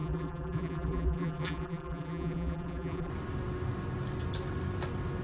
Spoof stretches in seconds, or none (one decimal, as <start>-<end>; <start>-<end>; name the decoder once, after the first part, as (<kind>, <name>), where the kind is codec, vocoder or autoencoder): 0.0-3.1 (vocoder, BigVGAN v2)